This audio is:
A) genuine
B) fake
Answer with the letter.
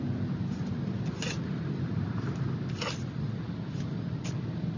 A